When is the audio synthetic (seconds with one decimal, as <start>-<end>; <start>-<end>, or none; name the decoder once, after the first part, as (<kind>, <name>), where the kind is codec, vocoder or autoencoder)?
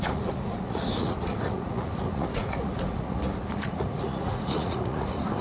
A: 0.0-5.4 (vocoder, Vocos)